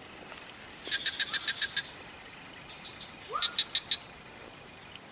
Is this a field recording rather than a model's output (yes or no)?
yes